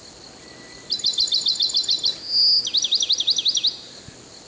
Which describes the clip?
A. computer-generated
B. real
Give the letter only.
B